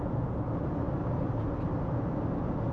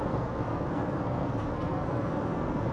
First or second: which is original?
first